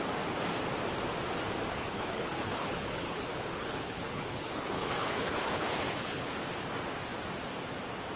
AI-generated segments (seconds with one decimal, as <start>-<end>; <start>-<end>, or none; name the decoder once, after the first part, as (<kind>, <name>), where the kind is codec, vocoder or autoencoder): 1.7-6.3 (codec, HILCodec)